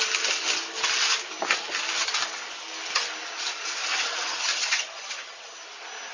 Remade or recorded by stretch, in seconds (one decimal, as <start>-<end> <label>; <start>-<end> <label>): 0.0-3.9 recorded; 3.9-5.6 remade; 5.6-6.1 recorded